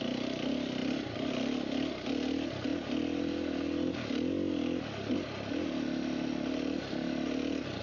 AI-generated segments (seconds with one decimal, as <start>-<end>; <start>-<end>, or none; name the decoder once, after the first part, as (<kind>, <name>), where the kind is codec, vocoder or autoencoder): 0.8-1.3 (vocoder, BigVGAN v2)